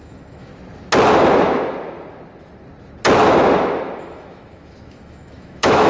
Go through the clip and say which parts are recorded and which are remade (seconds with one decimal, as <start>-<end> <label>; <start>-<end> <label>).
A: 0.0-0.5 remade; 0.5-4.0 recorded; 4.0-5.9 remade